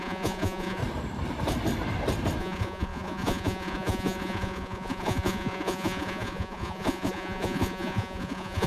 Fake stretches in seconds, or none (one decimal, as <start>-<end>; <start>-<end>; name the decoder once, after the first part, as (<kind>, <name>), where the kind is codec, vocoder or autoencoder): 0.0-0.8 (vocoder, Vocos); 2.4-8.7